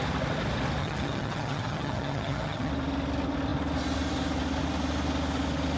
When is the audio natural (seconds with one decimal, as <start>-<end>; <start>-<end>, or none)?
0.0-0.8; 2.7-5.8